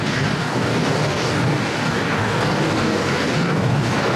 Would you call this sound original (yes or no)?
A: no